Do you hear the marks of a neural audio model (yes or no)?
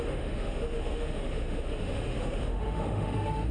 yes